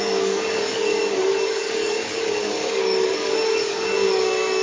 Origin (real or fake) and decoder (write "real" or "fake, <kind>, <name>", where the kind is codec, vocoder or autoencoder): fake, codec, DAC